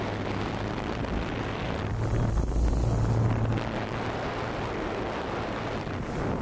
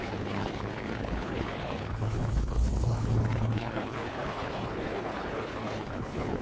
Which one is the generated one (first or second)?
second